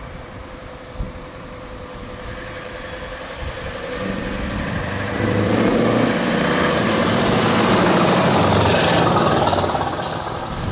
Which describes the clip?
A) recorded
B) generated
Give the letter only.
B